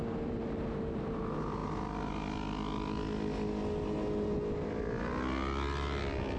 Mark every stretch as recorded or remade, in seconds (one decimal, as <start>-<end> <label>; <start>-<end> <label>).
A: 0.0-6.4 recorded